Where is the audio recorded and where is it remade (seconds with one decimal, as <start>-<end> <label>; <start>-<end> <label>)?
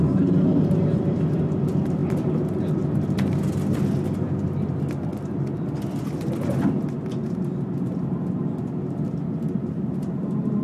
0.0-10.6 recorded